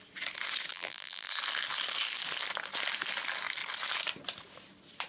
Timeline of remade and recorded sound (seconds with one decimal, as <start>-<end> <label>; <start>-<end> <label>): 0.0-0.7 recorded; 0.7-1.3 remade; 1.3-5.1 recorded